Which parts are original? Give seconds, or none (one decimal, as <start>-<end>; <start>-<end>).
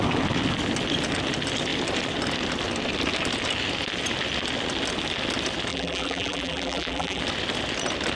0.0-5.7; 7.2-8.2